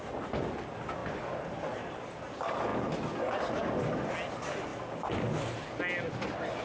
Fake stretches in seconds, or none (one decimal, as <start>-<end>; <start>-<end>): none